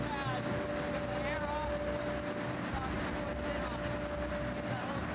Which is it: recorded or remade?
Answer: recorded